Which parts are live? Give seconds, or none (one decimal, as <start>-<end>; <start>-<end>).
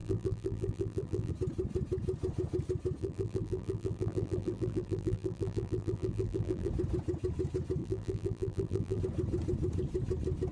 1.3-3.0; 6.7-7.8; 9.0-10.5